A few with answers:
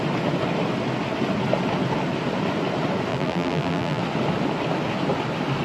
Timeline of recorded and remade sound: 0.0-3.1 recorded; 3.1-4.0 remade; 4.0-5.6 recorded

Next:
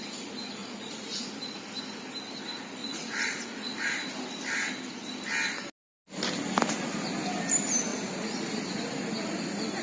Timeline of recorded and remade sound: 0.0-0.6 recorded; 0.6-1.3 remade; 1.3-2.8 recorded; 2.8-3.9 remade; 3.9-7.9 recorded; 7.9-8.5 remade; 8.5-9.8 recorded

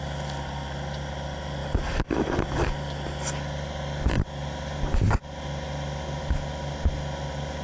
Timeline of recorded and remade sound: 0.0-7.6 recorded

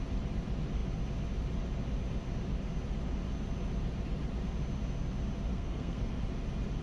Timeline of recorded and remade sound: 0.0-5.5 recorded; 5.5-6.2 remade; 6.2-6.8 recorded

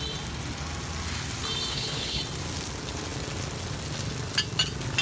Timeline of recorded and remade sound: 0.0-1.7 recorded; 1.7-2.2 remade; 2.2-5.0 recorded

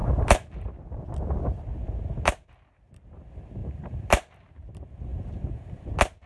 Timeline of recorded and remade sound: 0.0-0.7 remade; 0.7-3.6 recorded; 3.6-4.3 remade; 4.3-5.1 recorded; 5.1-5.8 remade; 5.8-6.3 recorded

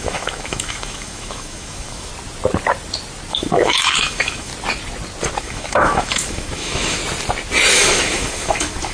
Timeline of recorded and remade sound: 0.0-2.1 remade; 2.1-3.3 recorded; 3.3-4.5 remade; 4.5-5.4 recorded; 5.4-7.0 remade; 7.0-7.7 recorded; 7.7-8.9 remade

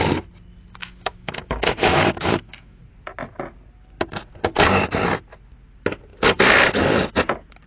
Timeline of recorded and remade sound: 0.0-0.8 recorded; 0.8-2.8 remade; 2.8-7.7 recorded